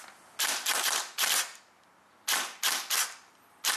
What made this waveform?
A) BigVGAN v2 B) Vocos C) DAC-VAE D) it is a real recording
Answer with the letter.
D